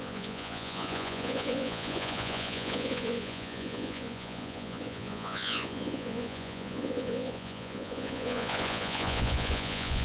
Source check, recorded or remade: remade